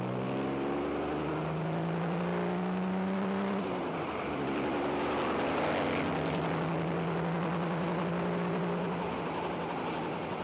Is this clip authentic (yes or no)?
yes